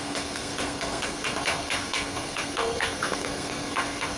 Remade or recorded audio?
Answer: remade